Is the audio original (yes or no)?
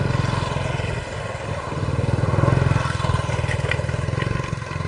yes